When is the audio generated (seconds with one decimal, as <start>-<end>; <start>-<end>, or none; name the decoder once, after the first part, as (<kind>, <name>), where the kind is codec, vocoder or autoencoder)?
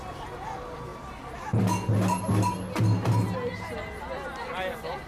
none